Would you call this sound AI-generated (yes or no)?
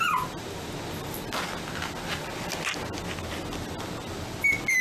no